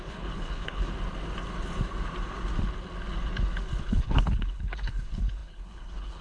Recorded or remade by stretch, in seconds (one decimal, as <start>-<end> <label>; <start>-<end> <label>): 0.0-0.9 remade; 0.9-3.8 recorded; 3.8-6.2 remade